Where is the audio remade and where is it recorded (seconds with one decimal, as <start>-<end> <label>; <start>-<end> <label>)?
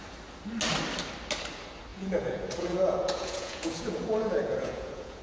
0.0-1.9 recorded; 1.9-5.2 remade